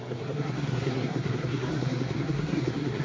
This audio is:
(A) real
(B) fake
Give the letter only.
B